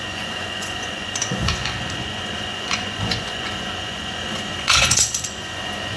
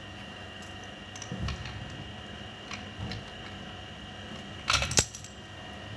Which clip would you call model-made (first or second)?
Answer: first